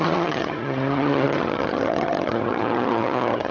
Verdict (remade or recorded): remade